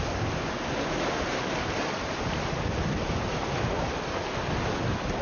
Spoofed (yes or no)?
no